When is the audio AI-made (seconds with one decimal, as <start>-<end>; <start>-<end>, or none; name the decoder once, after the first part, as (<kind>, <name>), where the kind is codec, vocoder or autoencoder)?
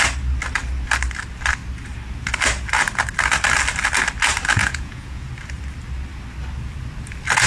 4.6-5.3 (vocoder, Vocos)